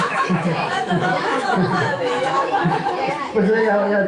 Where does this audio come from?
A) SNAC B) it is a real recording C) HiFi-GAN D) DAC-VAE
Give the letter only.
D